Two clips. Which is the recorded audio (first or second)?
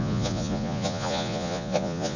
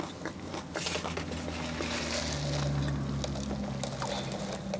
second